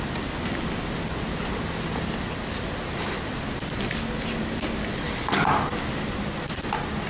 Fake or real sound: real